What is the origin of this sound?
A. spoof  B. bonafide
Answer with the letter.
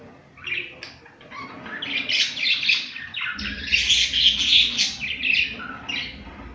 B